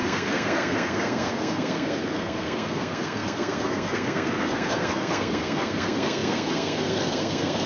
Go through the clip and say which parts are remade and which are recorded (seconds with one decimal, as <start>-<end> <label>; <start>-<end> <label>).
0.0-7.7 remade